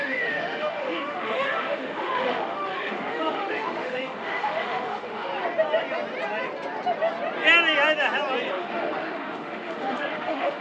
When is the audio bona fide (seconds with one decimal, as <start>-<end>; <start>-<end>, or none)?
5.3-8.5